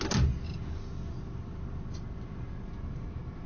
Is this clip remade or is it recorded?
recorded